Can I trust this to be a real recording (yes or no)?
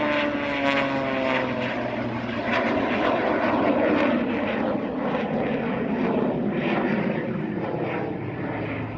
yes